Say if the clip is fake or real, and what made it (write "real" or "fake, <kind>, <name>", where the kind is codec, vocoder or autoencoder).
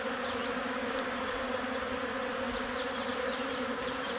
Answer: real